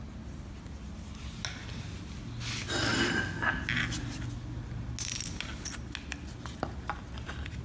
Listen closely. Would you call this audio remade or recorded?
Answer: recorded